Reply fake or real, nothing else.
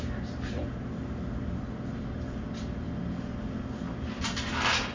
real